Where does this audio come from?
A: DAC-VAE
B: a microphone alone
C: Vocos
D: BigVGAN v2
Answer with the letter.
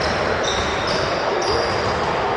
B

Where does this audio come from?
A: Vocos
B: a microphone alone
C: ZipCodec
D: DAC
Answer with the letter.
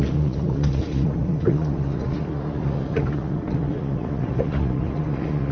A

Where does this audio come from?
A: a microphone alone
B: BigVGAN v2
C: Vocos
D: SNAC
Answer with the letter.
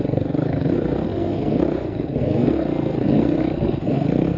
D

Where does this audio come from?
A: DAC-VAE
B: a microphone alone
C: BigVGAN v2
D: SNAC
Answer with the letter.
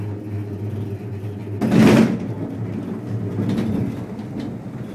B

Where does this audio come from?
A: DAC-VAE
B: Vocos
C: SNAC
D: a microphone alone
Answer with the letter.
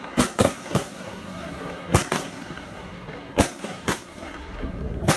C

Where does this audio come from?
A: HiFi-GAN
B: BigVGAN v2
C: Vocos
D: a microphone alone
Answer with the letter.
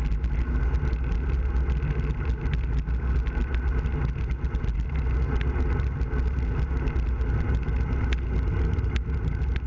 D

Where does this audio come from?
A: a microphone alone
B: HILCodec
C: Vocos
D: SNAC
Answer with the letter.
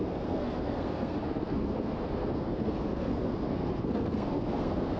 D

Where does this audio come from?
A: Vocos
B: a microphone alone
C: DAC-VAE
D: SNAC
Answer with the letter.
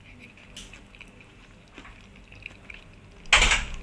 B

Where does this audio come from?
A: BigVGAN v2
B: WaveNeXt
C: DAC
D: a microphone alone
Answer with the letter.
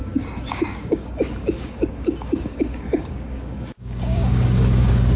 C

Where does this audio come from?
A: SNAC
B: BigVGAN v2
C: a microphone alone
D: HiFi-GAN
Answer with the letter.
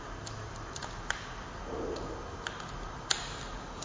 C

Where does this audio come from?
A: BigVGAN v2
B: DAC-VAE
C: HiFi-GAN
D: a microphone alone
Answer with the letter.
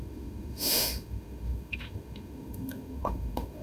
B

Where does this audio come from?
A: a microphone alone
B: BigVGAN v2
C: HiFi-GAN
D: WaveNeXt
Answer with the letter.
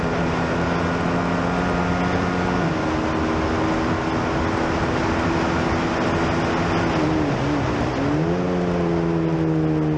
A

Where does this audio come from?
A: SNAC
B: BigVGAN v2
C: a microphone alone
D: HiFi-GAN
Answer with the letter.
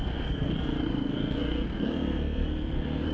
A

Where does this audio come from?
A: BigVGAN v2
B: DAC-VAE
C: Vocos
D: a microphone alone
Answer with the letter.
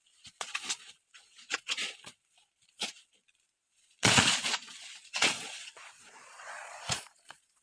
C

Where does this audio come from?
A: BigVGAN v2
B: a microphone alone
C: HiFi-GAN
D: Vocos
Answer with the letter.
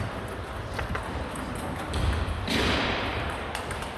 A